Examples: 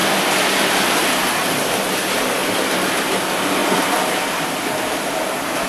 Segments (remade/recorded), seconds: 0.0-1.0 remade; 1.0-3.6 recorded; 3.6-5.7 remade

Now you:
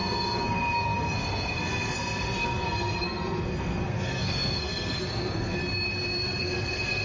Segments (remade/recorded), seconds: 0.0-5.6 remade; 5.6-6.4 recorded; 6.4-7.0 remade